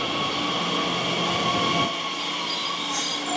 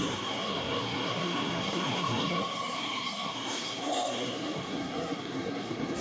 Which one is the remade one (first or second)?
second